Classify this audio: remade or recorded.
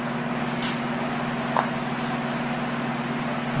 recorded